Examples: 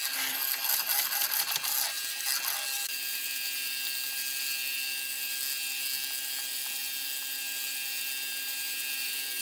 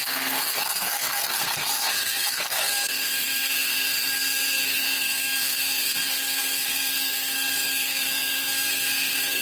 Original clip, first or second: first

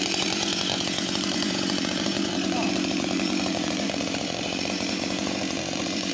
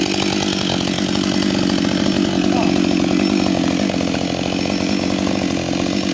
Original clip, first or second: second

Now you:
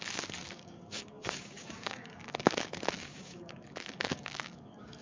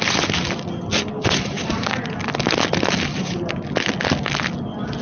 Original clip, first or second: second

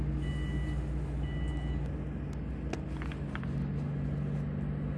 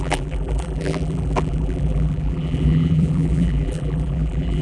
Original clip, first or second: first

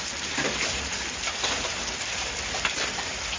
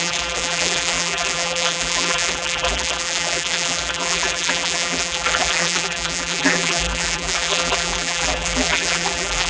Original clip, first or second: first